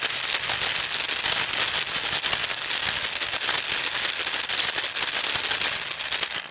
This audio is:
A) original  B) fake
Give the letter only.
A